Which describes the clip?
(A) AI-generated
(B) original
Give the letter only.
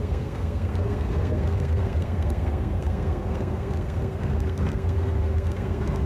A